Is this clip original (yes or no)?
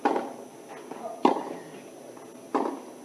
yes